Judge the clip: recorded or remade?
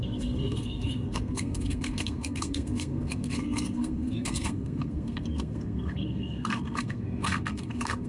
remade